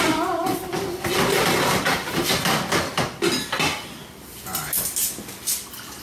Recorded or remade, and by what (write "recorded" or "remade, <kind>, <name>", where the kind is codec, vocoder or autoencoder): recorded